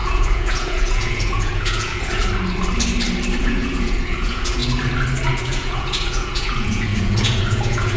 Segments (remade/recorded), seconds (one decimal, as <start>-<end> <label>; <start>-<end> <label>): 0.0-2.2 remade; 2.2-3.4 recorded; 3.4-4.6 remade; 4.6-5.3 recorded; 5.3-8.0 remade